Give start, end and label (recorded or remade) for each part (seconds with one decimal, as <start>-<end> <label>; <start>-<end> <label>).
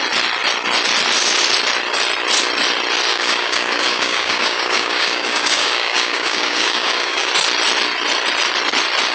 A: 0.0-3.1 recorded; 3.1-7.3 remade; 7.3-9.1 recorded